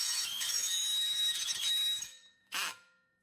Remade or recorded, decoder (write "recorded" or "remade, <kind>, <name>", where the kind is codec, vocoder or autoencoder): remade, autoencoder, DAC-VAE